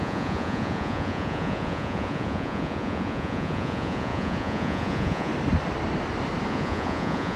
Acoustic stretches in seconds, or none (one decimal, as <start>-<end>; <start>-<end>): 5.3-6.5